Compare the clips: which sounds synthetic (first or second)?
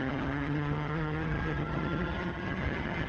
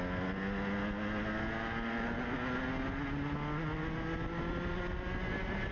first